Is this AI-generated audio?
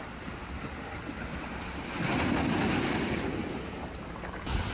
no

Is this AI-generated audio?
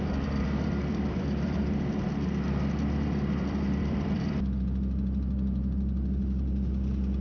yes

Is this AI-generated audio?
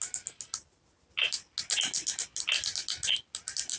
no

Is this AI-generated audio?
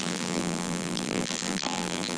yes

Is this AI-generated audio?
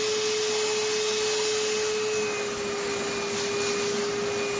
no